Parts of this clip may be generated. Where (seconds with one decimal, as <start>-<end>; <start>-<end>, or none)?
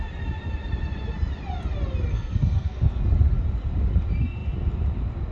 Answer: 2.1-3.0